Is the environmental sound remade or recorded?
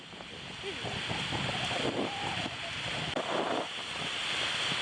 recorded